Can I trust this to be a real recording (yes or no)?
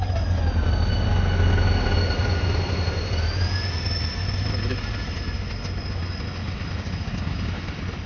yes